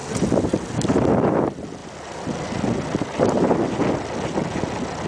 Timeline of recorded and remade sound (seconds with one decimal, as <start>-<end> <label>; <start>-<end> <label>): 0.0-5.1 recorded

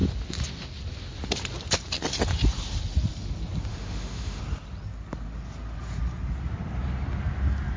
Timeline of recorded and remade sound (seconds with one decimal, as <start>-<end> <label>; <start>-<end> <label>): 0.0-3.7 recorded; 3.7-4.4 remade; 4.4-7.8 recorded

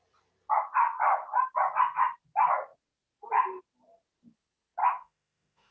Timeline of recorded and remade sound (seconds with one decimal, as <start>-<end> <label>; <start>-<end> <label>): 0.0-4.8 recorded; 4.8-5.7 remade

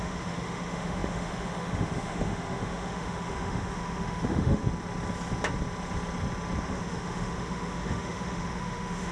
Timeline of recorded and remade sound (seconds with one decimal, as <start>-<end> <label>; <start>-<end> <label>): 0.0-4.6 remade; 4.6-6.6 recorded; 6.6-9.1 remade